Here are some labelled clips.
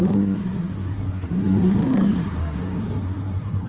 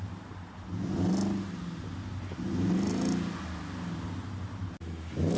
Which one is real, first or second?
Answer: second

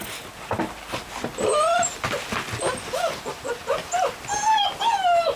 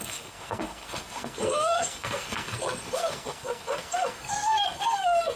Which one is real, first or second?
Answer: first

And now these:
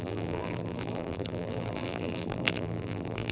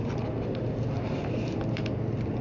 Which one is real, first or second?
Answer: second